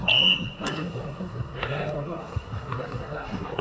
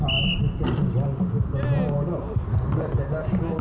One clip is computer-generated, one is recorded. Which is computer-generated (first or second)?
first